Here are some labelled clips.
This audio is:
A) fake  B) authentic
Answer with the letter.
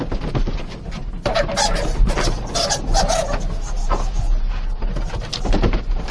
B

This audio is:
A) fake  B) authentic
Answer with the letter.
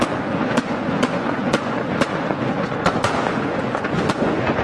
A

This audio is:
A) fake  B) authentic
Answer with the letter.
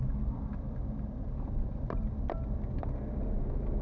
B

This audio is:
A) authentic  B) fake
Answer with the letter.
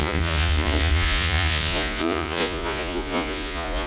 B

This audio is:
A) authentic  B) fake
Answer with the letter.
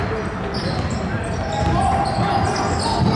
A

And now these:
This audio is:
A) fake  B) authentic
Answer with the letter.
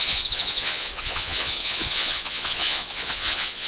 A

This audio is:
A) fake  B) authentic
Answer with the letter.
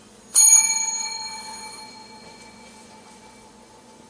A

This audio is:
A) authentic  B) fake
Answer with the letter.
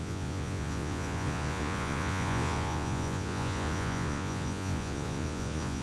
B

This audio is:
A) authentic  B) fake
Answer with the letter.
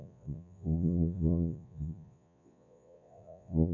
B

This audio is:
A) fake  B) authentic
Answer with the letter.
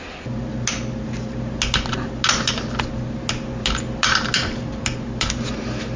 B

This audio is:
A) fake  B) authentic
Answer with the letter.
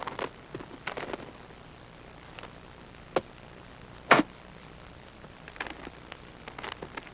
B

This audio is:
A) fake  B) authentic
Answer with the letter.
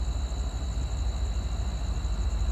B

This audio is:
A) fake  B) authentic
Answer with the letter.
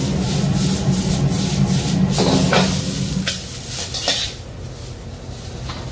B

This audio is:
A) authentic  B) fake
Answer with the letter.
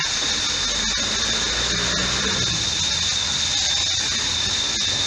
A